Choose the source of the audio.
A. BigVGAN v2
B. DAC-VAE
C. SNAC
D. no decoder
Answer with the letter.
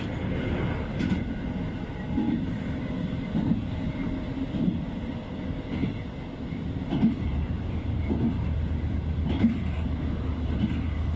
D